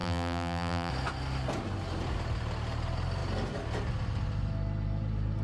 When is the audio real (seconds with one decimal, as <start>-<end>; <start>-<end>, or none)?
0.9-5.4